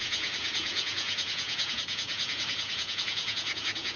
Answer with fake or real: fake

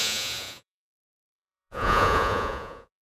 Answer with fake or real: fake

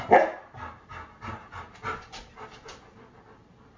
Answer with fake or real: real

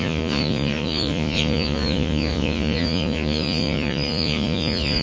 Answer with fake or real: fake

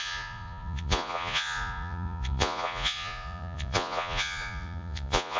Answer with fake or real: fake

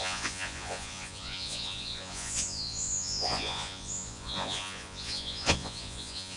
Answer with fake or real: fake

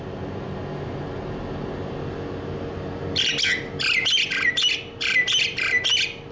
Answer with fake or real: real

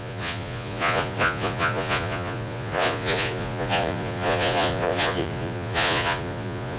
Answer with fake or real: fake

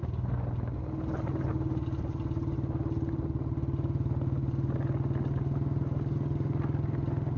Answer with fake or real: real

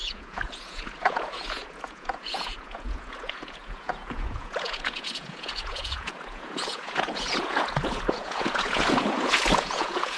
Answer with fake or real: fake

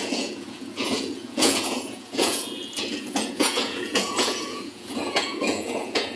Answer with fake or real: fake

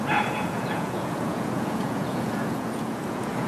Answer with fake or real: fake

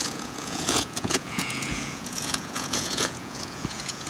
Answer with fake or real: fake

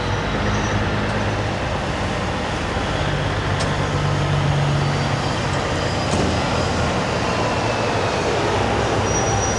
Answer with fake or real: real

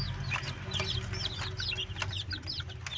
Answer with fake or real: real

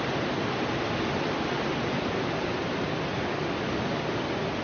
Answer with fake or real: real